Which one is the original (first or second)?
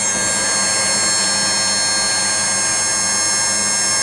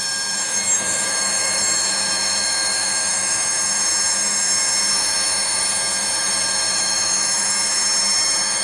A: first